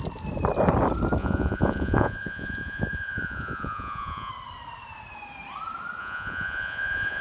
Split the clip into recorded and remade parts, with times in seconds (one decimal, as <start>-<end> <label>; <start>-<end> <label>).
0.0-1.2 recorded; 1.2-4.3 remade; 4.3-6.0 recorded; 6.0-7.2 remade